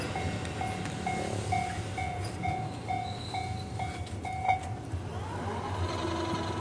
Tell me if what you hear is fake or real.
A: real